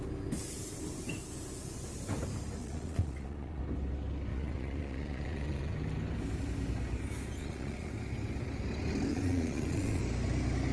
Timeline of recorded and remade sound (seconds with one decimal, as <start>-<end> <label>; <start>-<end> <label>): 0.0-2.6 recorded; 2.6-3.6 remade; 3.6-4.3 recorded; 4.3-5.7 remade; 5.7-7.4 recorded; 7.4-7.9 remade; 7.9-9.1 recorded; 9.1-10.0 remade; 10.0-10.7 recorded